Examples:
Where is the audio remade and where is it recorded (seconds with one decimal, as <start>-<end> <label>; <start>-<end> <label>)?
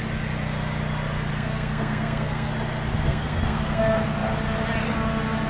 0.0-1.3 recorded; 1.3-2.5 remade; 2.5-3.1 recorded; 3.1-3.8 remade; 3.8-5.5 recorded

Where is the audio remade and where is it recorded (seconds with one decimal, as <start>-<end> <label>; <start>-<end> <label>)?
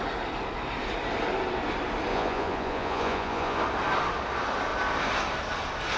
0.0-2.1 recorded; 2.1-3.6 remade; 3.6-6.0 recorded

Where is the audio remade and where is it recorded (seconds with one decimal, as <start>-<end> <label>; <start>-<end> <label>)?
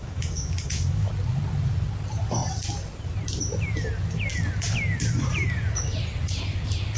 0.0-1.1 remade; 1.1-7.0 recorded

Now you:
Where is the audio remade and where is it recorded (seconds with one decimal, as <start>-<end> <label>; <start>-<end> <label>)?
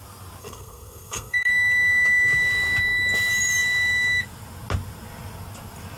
0.0-0.4 recorded; 0.4-1.5 remade; 1.5-6.0 recorded